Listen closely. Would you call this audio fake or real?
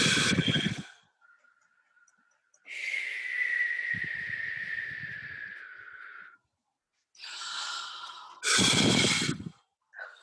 real